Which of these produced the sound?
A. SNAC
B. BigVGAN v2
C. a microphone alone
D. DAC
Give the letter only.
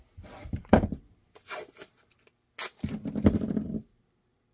C